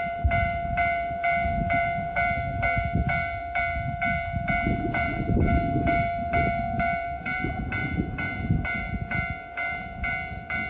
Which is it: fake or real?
fake